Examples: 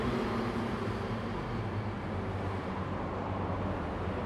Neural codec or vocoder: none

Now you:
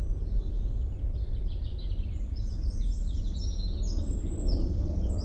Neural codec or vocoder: none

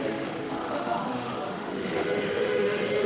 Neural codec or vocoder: autoencoder, DAC-VAE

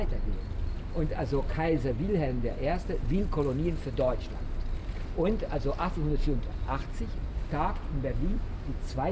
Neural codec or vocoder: none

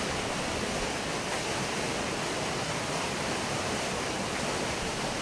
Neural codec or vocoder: none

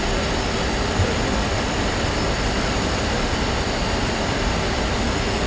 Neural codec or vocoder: none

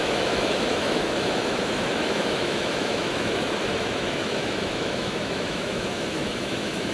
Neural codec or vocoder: autoencoder, DAC-VAE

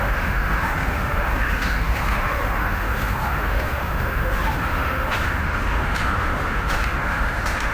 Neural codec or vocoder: autoencoder, DAC-VAE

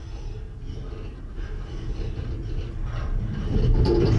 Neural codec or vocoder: none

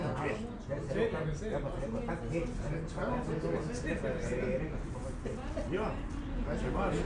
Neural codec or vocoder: none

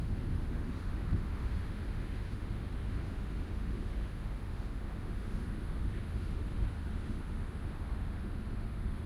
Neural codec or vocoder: autoencoder, DAC-VAE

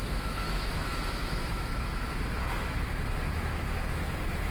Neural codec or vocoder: autoencoder, DAC-VAE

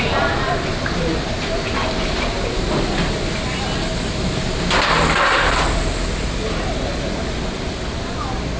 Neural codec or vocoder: none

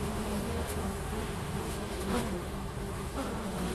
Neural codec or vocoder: autoencoder, DAC-VAE